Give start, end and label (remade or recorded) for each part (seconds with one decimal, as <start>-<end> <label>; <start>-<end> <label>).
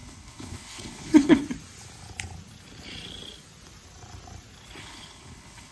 0.0-1.4 remade; 1.4-4.8 recorded; 4.8-5.7 remade